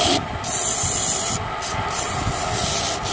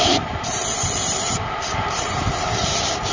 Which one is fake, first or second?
second